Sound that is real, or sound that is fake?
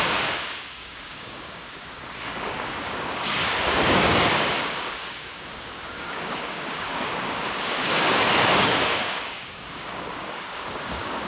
fake